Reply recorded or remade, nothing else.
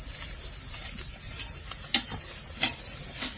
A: recorded